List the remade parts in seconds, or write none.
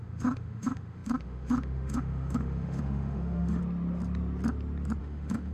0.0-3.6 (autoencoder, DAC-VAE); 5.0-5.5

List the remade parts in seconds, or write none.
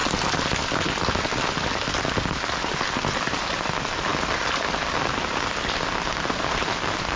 none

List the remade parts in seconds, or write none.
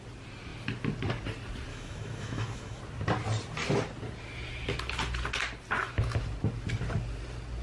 1.7-2.8 (autoencoder, DAC-VAE)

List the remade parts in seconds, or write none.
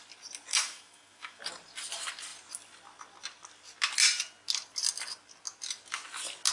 0.5-1.4 (autoencoder, DAC-VAE)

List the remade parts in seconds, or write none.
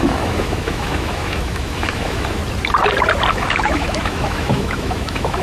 0.0-2.4 (autoencoder, DAC-VAE); 3.3-5.4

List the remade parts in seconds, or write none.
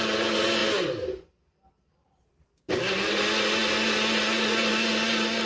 none